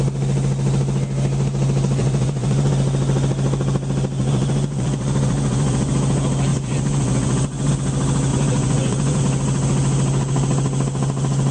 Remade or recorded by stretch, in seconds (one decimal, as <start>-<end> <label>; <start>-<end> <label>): 0.0-2.0 recorded; 2.0-2.7 remade; 2.7-4.2 recorded; 4.2-5.9 remade; 5.9-6.5 recorded; 6.5-7.7 remade; 7.7-8.3 recorded; 8.3-9.2 remade; 9.2-11.5 recorded